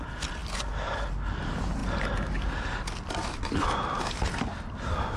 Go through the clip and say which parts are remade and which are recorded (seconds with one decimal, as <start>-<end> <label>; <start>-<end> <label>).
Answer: 0.0-5.2 recorded